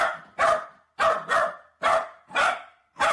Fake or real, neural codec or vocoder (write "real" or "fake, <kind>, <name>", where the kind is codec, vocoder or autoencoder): real